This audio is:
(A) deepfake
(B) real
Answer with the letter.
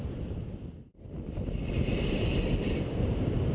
B